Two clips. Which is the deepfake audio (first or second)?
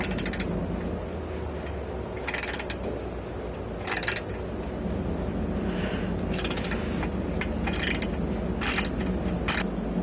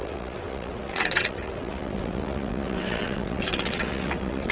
second